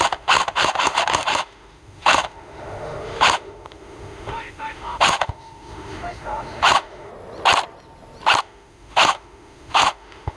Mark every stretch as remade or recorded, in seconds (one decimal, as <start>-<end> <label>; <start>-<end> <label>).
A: 0.0-7.1 remade; 7.1-8.4 recorded; 8.4-10.4 remade